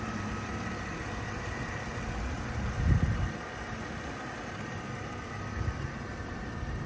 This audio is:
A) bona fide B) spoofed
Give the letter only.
A